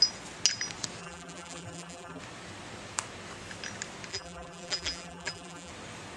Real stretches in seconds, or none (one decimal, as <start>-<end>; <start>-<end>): 0.0-1.0; 2.2-4.1; 5.7-6.2